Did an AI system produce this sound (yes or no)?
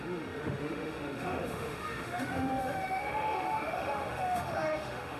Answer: yes